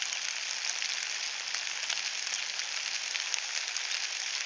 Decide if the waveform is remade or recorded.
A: recorded